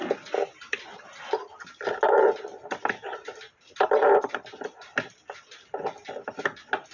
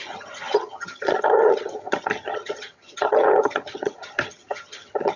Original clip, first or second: first